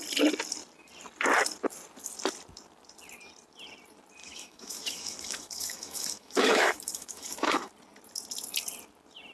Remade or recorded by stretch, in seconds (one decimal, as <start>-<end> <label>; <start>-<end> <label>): 0.0-4.2 recorded; 4.2-7.7 remade; 7.7-9.3 recorded